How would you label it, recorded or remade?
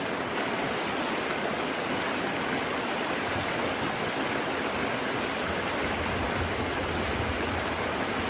recorded